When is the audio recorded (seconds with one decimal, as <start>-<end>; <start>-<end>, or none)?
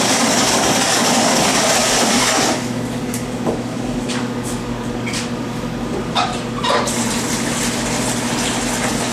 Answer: 1.5-2.2; 6.3-9.1